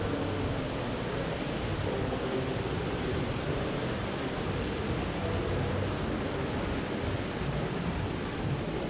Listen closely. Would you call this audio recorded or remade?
recorded